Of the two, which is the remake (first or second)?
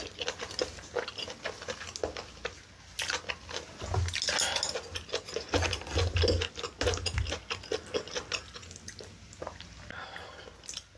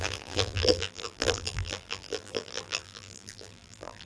second